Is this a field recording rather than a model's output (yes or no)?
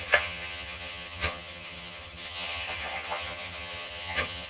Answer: no